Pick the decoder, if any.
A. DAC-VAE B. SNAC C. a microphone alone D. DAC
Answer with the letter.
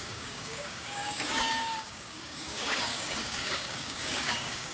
D